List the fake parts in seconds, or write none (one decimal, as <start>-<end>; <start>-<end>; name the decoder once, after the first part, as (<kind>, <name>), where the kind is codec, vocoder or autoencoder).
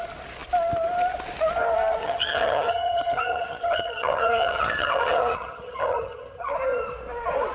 2.0-6.5 (vocoder, HiFi-GAN)